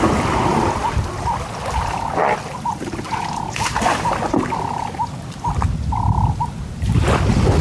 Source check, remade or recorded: recorded